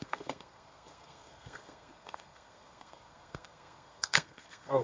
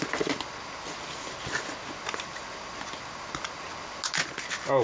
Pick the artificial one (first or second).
first